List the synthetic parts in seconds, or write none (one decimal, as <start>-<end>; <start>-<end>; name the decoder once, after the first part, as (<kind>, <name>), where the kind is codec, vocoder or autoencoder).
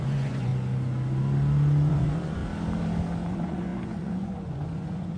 0.0-0.5 (vocoder, Vocos); 1.9-2.4; 3.3-5.2